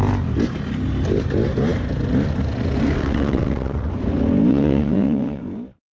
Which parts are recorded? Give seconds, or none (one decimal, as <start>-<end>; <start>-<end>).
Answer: 0.0-3.0; 3.9-4.5; 5.4-5.9